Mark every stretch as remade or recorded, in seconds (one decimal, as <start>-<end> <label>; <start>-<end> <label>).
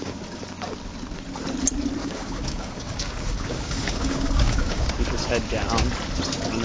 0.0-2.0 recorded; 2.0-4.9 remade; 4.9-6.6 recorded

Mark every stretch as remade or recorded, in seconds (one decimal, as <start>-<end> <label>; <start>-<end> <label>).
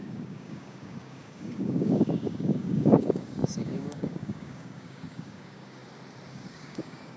0.0-5.8 remade; 5.8-6.3 recorded; 6.3-7.2 remade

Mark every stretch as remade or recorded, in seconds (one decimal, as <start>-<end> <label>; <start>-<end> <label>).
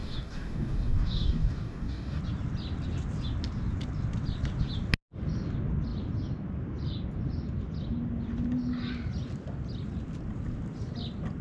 0.0-2.2 remade; 2.2-11.4 recorded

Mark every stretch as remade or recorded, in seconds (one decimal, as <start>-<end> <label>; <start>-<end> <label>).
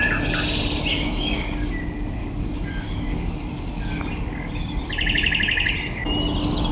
0.0-0.9 recorded; 0.9-1.7 remade; 1.7-2.2 recorded; 2.2-4.8 remade; 4.8-6.7 recorded